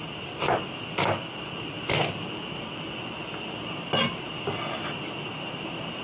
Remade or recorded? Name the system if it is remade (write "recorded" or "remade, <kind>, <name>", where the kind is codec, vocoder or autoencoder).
recorded